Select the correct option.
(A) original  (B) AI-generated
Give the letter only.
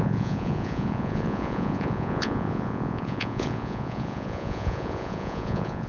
B